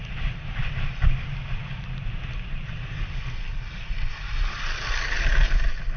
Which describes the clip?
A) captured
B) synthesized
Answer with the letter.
A